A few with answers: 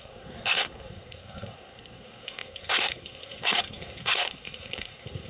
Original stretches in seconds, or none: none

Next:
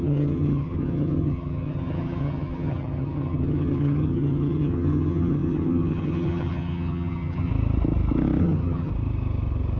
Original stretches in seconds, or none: 7.5-8.4; 8.9-9.8

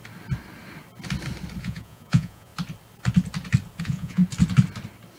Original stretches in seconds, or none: 0.0-1.6; 2.5-3.8; 4.2-5.2

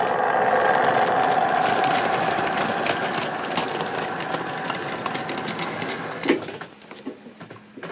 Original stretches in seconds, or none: 0.0-7.9

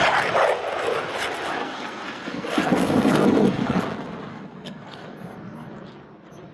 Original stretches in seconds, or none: 0.0-1.6; 3.8-4.3; 5.7-6.5

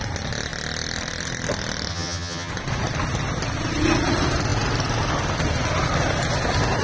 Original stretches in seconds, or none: 0.0-1.9; 2.5-6.8